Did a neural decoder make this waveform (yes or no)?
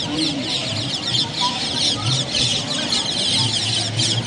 no